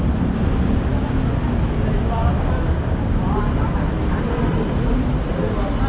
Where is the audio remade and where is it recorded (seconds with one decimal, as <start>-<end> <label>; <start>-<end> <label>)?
0.0-2.2 recorded; 2.2-3.2 remade; 3.2-5.9 recorded